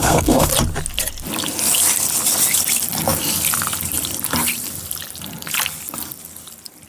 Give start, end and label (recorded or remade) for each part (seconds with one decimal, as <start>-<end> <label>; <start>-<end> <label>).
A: 0.0-0.5 remade; 0.5-6.9 recorded